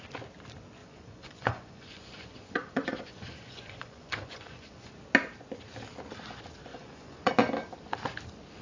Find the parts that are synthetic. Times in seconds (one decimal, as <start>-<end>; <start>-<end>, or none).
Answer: 0.8-4.9; 6.7-7.3